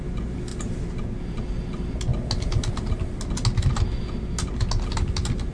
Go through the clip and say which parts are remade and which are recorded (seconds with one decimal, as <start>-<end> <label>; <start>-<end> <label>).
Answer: 0.0-5.5 recorded